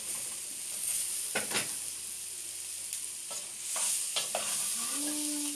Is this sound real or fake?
real